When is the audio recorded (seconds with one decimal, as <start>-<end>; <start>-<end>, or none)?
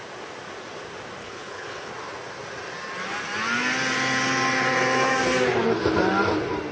0.0-1.2; 1.9-6.7